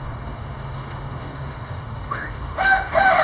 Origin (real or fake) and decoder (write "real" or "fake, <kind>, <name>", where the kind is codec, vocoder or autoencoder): fake, autoencoder, DAC-VAE